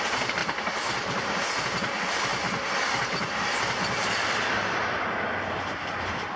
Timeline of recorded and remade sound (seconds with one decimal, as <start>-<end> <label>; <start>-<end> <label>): 0.0-0.4 recorded; 0.4-1.7 remade; 1.7-2.3 recorded; 2.3-6.4 remade